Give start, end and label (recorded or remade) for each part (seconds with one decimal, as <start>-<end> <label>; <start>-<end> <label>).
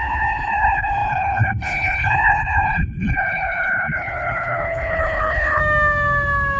0.0-5.6 remade; 5.6-6.6 recorded